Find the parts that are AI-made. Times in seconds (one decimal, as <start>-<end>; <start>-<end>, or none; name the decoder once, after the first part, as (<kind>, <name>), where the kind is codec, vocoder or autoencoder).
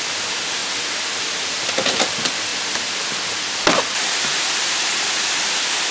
none